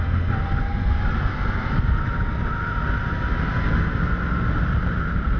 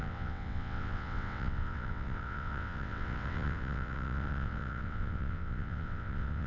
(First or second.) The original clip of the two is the first